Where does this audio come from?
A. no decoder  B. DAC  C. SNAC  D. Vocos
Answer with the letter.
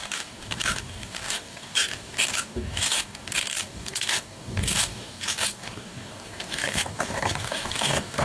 B